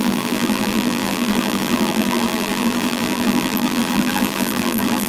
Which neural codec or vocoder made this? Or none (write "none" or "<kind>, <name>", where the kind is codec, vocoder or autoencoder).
vocoder, BigVGAN v2